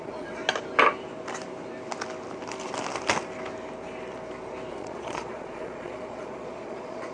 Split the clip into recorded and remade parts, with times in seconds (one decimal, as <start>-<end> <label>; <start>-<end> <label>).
0.0-0.4 remade; 0.4-4.7 recorded; 4.7-7.1 remade